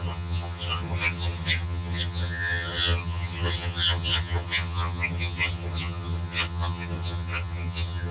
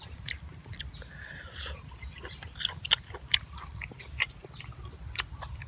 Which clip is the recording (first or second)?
second